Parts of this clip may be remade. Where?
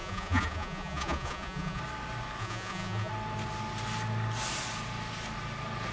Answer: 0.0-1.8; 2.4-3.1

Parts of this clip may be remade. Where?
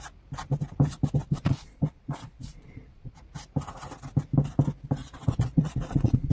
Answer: 1.2-3.2; 5.0-6.3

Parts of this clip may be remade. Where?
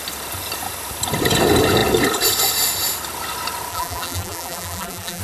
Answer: 3.7-5.2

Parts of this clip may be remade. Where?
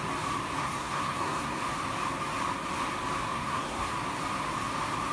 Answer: 0.6-1.6; 3.3-3.9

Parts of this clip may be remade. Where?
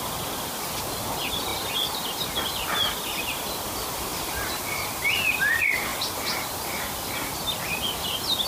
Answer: 4.1-5.5